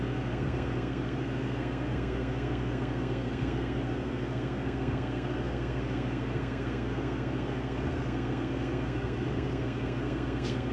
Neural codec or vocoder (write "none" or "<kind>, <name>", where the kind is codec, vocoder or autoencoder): codec, SNAC